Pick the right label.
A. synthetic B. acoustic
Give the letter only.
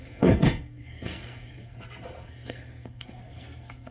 A